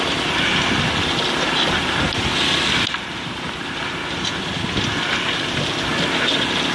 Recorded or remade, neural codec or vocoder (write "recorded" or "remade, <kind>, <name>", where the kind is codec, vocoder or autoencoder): recorded